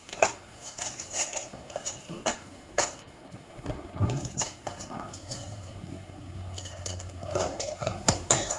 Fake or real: fake